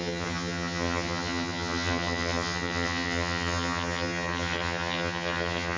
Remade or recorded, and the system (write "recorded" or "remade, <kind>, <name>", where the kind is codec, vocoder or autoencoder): remade, vocoder, HiFi-GAN